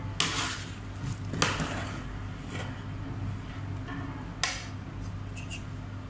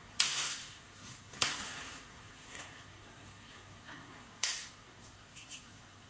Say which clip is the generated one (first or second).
second